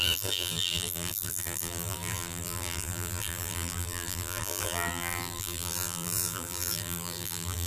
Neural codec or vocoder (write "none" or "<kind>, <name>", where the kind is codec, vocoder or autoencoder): vocoder, BigVGAN v2